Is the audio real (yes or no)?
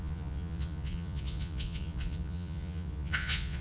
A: no